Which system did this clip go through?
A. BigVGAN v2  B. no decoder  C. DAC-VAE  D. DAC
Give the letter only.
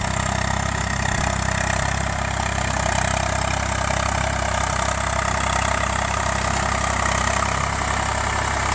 B